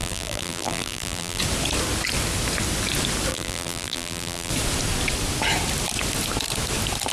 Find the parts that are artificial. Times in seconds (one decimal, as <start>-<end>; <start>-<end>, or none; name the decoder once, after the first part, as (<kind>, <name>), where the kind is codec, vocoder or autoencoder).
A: 0.0-1.4 (vocoder, BigVGAN v2); 3.3-4.5

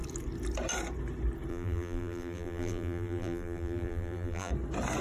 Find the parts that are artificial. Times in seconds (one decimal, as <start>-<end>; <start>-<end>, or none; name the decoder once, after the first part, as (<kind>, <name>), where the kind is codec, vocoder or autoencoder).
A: 1.5-4.5 (vocoder, BigVGAN v2)

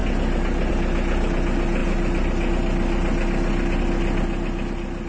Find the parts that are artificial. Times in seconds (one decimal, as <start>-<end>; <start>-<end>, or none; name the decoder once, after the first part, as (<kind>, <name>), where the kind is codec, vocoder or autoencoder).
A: none

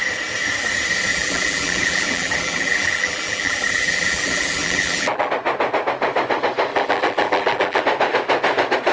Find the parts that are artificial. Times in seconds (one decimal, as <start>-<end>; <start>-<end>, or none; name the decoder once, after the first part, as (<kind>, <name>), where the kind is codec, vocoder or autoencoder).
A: 1.1-5.3 (vocoder, BigVGAN v2); 6.7-7.8

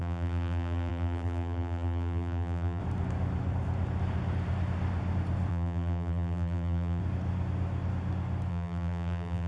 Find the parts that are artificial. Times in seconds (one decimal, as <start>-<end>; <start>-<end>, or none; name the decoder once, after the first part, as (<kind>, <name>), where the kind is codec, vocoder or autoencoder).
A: 0.0-2.8 (vocoder, BigVGAN v2); 5.5-7.0; 8.5-9.5

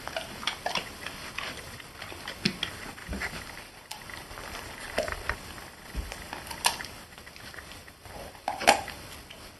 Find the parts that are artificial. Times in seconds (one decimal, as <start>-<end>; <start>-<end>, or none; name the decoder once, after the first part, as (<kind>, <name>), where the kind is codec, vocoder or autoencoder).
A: 3.0-4.6 (vocoder, BigVGAN v2); 7.8-9.0